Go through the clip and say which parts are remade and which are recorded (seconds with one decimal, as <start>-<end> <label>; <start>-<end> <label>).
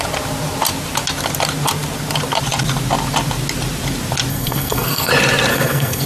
0.0-4.3 recorded; 4.3-5.1 remade; 5.1-5.5 recorded; 5.5-6.1 remade